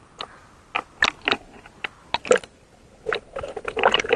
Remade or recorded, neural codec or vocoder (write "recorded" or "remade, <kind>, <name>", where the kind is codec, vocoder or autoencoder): recorded